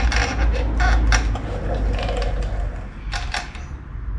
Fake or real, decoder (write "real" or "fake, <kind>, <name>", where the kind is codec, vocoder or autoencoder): real